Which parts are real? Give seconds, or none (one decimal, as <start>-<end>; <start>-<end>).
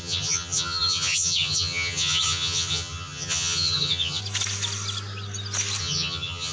4.2-5.8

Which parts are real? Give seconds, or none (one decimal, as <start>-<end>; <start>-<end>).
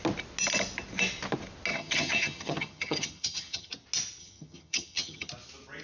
0.0-1.7; 3.7-4.2; 5.3-5.8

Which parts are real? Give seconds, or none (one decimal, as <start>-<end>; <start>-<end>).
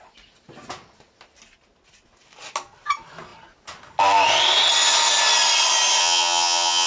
0.0-6.0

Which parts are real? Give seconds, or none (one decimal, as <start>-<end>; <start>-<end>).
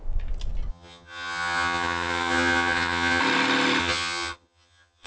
0.0-0.7; 3.2-3.8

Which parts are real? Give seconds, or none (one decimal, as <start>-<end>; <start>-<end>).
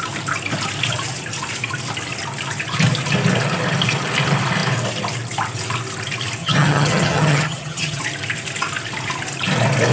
0.0-6.4; 8.0-9.9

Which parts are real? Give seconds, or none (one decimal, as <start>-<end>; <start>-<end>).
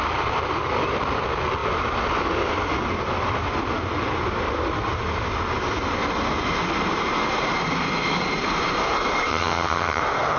0.0-9.3; 10.0-10.4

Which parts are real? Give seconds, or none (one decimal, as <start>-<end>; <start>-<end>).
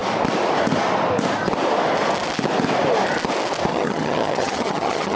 0.0-3.7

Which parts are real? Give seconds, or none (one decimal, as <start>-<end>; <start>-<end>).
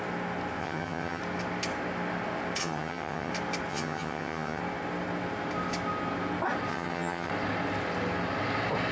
0.0-0.6; 1.2-2.6; 3.3-3.7; 4.6-6.7; 7.3-8.9